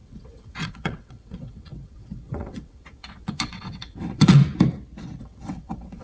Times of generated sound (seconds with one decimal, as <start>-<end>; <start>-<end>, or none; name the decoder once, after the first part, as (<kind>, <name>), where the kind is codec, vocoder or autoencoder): 0.0-4.4 (vocoder, WaveNeXt); 5.2-6.0